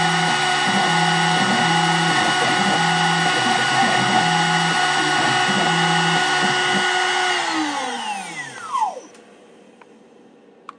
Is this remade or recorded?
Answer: recorded